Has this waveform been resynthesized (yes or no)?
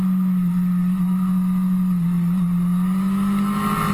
no